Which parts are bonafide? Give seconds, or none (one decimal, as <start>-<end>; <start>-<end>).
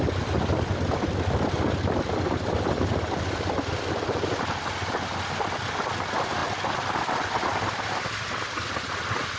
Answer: 0.0-9.4